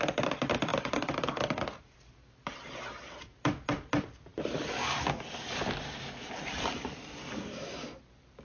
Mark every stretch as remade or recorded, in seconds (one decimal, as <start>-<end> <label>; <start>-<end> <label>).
0.0-4.3 remade; 4.3-6.3 recorded; 6.3-8.4 remade